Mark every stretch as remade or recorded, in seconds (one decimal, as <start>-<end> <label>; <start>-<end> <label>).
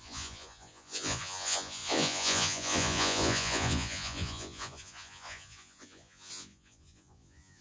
0.0-7.6 remade